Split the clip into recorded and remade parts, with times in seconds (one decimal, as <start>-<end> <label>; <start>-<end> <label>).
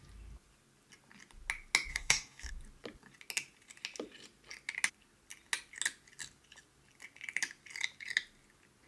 0.0-1.9 recorded; 1.9-2.5 remade; 2.5-8.9 recorded